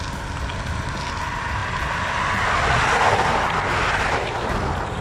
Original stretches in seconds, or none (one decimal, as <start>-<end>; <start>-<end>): 0.0-5.0